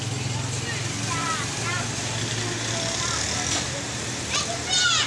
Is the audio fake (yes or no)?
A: no